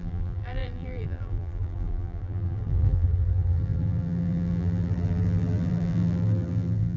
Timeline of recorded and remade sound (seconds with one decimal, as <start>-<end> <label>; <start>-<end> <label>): 0.0-7.0 remade